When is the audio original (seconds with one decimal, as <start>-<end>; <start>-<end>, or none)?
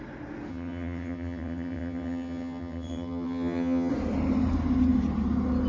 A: 0.0-0.5; 3.9-5.7